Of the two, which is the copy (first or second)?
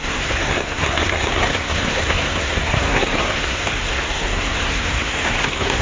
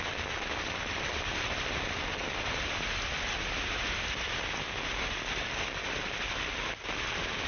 first